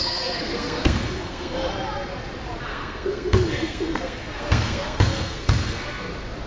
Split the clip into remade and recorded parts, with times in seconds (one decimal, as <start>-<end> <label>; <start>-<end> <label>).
0.0-1.7 remade; 1.7-2.7 recorded; 2.7-6.1 remade; 6.1-6.5 recorded